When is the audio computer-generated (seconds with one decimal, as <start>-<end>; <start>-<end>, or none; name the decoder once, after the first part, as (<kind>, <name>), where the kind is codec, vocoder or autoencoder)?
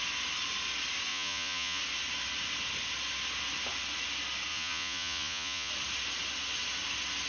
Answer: 1.1-1.8 (vocoder, Vocos); 4.5-5.7